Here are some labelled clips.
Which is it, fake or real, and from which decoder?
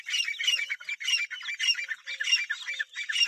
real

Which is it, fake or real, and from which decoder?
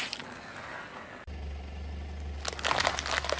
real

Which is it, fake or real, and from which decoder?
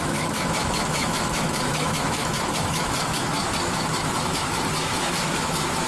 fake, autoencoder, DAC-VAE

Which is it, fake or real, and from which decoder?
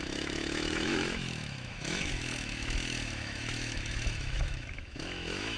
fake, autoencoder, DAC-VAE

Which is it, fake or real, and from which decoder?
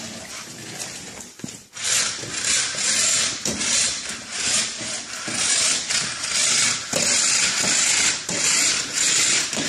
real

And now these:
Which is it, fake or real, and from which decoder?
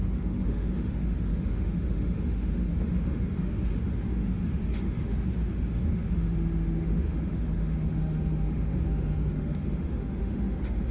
fake, autoencoder, DAC-VAE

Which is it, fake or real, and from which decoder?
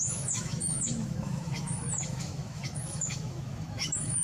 fake, autoencoder, DAC-VAE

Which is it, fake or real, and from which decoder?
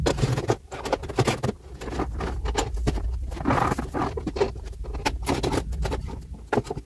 real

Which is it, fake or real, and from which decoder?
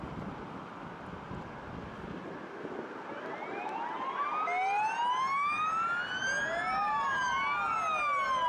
real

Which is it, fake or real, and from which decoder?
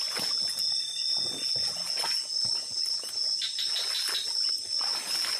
real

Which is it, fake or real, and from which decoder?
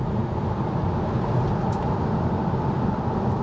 real